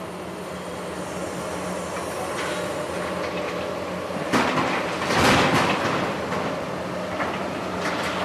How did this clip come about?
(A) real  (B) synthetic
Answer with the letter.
A